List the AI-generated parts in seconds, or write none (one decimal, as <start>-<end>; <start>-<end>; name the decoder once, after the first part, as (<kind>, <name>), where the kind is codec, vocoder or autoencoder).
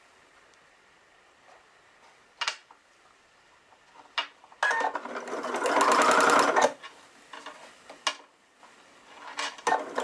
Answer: none